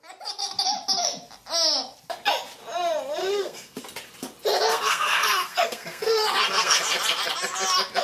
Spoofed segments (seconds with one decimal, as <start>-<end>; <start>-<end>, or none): 3.2-3.8; 4.7-6.8